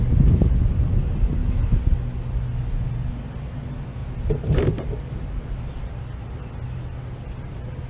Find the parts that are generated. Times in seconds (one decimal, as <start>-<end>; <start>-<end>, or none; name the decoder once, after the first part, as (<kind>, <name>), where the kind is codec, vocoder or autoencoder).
4.0-4.6 (vocoder, BigVGAN v2)